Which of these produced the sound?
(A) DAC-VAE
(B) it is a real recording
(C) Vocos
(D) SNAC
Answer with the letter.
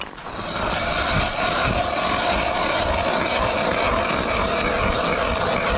B